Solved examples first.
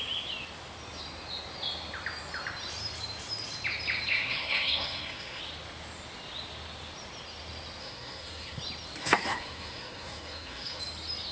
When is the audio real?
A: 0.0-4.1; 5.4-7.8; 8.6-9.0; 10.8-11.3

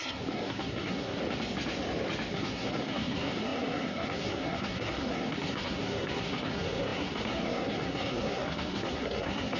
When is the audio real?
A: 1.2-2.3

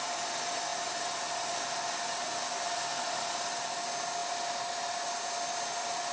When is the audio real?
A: 0.0-6.1

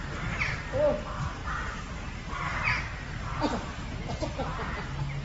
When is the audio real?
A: 0.0-5.2